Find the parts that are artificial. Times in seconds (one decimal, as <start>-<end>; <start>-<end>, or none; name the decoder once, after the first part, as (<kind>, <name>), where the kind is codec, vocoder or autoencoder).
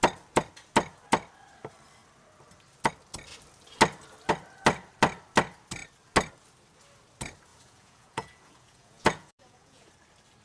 7.5-9.9 (vocoder, Vocos)